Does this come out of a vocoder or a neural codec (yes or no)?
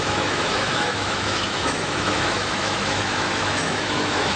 yes